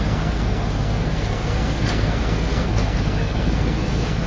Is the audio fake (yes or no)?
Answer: yes